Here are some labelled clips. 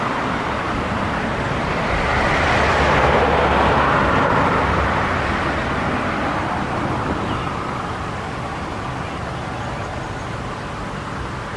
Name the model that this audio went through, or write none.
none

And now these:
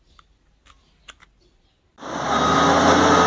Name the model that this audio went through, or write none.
none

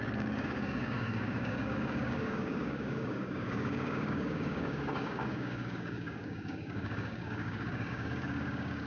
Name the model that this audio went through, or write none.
codec, DAC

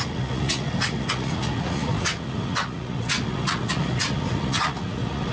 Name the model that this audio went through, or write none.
vocoder, Vocos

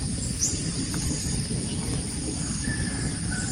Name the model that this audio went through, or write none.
none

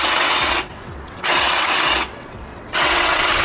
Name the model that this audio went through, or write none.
vocoder, WaveNeXt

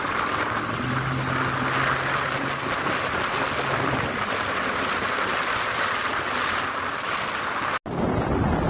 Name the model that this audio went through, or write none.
none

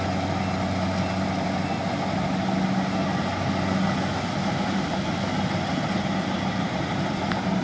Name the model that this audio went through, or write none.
none